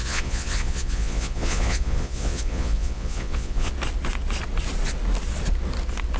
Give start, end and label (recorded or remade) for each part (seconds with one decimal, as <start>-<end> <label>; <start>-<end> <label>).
0.0-3.7 remade; 3.7-6.2 recorded